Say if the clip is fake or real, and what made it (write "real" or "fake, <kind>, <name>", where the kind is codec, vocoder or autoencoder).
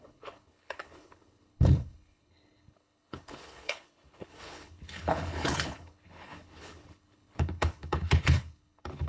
fake, codec, HILCodec